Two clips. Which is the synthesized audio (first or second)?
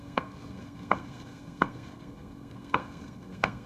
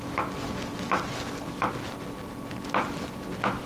first